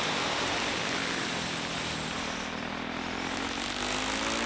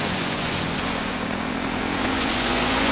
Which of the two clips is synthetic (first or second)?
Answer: second